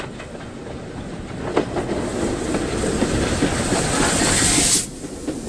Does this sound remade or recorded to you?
recorded